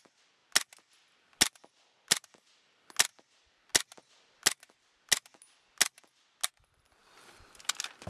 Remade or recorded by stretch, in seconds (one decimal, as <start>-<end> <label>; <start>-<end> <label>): 0.0-8.1 recorded